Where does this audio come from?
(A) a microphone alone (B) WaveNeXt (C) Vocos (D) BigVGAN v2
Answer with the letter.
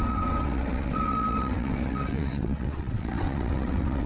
B